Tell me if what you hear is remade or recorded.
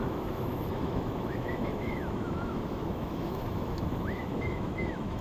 remade